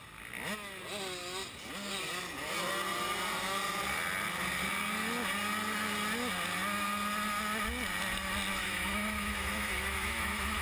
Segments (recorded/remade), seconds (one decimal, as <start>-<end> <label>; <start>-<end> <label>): 0.0-8.6 recorded; 8.6-10.6 remade